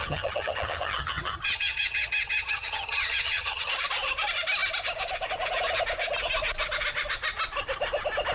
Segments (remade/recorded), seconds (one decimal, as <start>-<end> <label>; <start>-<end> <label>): 0.0-3.7 remade; 3.7-8.3 recorded